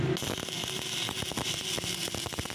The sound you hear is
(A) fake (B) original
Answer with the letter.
B